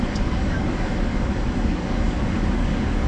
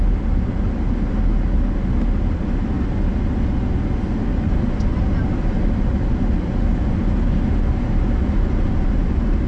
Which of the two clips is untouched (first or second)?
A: second